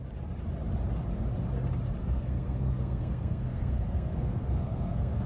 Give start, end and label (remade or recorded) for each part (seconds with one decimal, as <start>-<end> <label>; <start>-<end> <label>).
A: 0.0-2.0 recorded; 2.0-5.3 remade